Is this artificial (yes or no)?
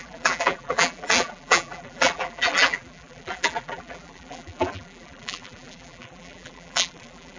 yes